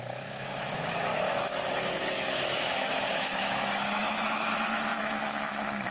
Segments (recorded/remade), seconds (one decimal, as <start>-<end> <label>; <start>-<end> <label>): 0.0-5.9 remade